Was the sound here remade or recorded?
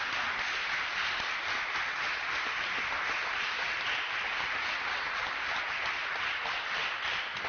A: recorded